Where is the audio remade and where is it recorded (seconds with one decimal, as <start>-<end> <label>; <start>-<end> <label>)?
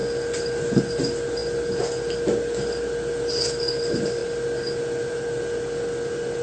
0.0-6.4 recorded